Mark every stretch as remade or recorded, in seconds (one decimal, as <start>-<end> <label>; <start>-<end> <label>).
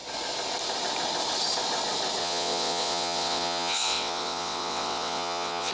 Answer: 0.0-2.2 recorded; 2.2-5.7 remade